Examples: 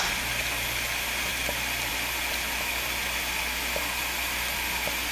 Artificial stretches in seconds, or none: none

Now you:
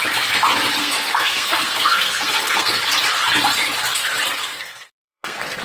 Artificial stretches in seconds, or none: 0.8-2.8 (codec, SNAC); 4.4-5.6

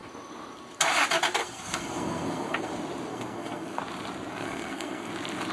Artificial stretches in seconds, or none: 1.4-2.7 (codec, SNAC); 3.1-3.8; 4.3-5.1

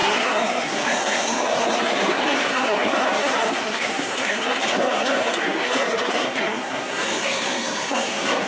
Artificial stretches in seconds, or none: 0.0-8.5 (codec, SNAC)

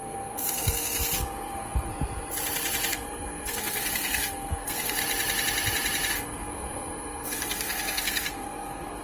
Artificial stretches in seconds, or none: 0.0-1.9 (codec, SNAC); 2.9-5.0; 6.1-9.0

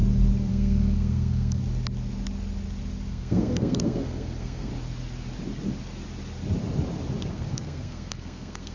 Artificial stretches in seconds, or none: 0.5-1.6 (codec, SNAC); 3.1-4.7; 7.3-8.7

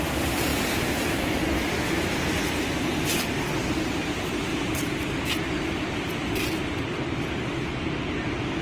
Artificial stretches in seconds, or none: none

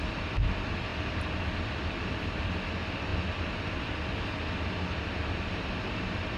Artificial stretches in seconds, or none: none